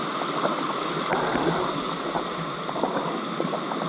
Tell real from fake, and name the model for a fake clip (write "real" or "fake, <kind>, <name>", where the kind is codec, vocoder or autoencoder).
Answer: real